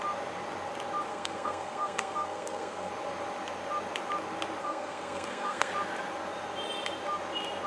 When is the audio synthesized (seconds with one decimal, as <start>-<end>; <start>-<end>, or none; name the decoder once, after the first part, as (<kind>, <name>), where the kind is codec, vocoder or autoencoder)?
1.1-2.9 (codec, SNAC); 4.6-5.7